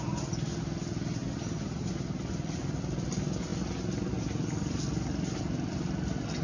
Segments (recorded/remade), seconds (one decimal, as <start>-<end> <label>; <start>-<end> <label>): 0.0-6.4 recorded